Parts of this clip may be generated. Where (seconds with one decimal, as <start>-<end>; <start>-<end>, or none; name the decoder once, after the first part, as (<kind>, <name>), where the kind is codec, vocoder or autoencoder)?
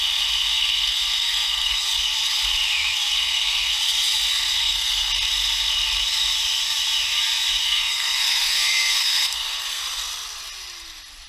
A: 0.5-1.8 (codec, SNAC); 3.1-3.7; 4.6-5.1; 7.6-9.8